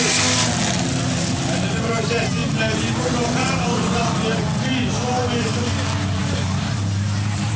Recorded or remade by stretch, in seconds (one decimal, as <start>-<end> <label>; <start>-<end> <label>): 0.0-2.4 recorded; 2.4-4.4 remade; 4.4-6.2 recorded; 6.2-7.6 remade